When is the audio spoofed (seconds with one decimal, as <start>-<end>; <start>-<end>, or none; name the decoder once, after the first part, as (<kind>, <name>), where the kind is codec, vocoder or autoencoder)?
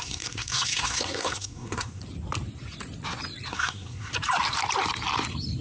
0.0-2.0 (codec, SNAC); 3.5-4.1